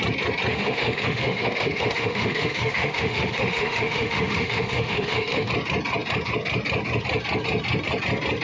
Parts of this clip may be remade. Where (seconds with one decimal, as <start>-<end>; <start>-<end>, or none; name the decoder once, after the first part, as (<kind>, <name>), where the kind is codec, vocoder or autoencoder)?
0.5-5.5 (autoencoder, DAC-VAE)